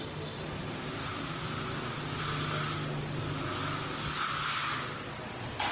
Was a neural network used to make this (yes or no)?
no